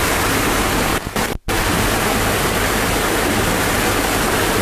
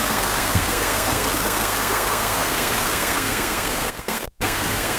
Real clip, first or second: first